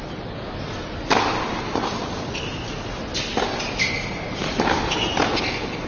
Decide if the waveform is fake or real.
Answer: real